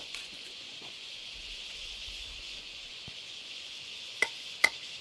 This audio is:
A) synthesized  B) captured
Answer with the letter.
A